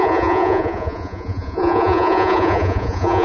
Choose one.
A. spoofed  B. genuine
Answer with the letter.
A